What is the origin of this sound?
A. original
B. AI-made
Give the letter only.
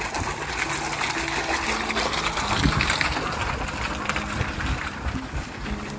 A